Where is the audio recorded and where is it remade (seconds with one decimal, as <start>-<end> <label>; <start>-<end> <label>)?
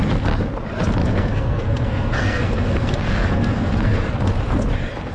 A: 0.0-1.0 recorded; 1.0-4.1 remade; 4.1-5.1 recorded